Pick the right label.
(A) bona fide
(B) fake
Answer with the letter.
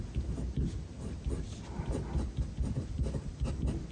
A